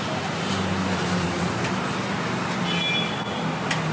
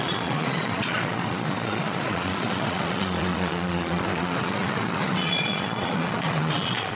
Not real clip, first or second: second